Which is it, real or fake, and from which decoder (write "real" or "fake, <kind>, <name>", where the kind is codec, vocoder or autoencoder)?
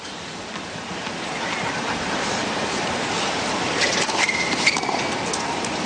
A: real